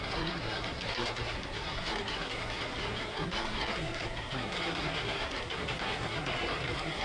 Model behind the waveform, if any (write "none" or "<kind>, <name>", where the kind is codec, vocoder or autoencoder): codec, SNAC